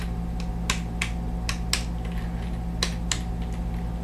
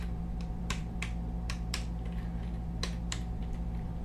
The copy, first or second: second